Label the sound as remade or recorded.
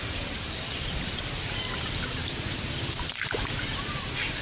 recorded